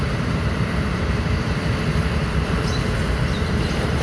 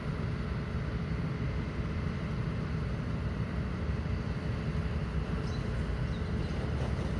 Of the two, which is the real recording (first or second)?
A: second